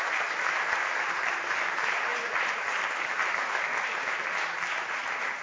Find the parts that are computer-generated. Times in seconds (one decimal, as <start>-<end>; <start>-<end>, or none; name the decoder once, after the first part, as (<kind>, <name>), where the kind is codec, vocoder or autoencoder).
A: none